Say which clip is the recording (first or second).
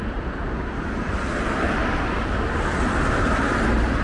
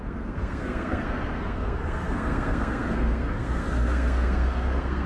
first